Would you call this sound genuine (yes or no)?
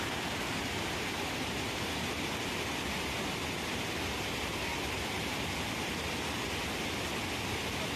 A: yes